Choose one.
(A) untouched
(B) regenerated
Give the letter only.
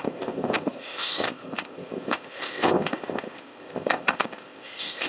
B